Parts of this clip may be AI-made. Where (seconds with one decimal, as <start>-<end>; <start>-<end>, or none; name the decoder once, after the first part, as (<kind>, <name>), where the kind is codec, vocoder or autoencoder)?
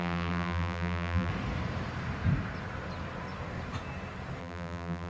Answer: 0.0-1.3 (vocoder, BigVGAN v2); 4.4-5.1